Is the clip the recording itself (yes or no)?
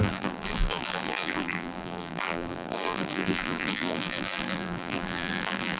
no